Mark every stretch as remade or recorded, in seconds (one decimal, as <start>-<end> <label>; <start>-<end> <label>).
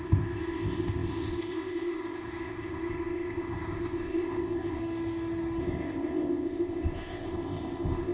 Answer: 0.0-4.8 remade; 4.8-5.6 recorded; 5.6-8.1 remade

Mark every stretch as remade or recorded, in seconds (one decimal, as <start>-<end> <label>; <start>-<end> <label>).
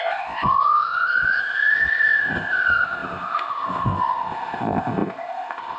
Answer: 0.0-5.8 remade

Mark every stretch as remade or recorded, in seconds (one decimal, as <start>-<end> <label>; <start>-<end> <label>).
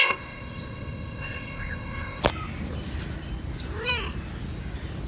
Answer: 0.0-2.2 remade; 2.2-5.1 recorded